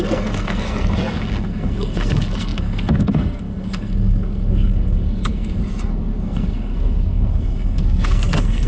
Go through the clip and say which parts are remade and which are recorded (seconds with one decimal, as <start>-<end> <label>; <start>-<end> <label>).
0.0-8.7 remade